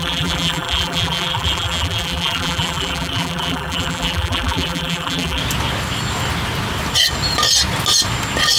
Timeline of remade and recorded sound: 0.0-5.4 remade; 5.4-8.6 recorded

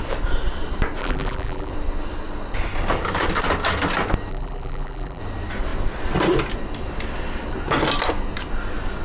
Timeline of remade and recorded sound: 0.0-1.0 recorded; 1.0-1.7 remade; 1.7-4.3 recorded; 4.3-5.2 remade; 5.2-9.0 recorded

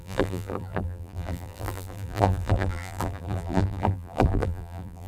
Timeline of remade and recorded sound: 0.0-5.1 remade

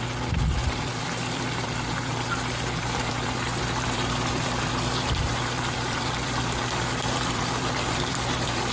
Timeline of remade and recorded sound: 0.0-2.1 remade; 2.1-3.0 recorded; 3.0-8.7 remade